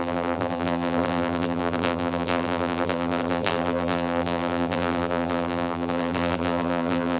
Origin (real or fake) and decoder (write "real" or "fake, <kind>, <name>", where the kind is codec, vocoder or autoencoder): fake, vocoder, BigVGAN v2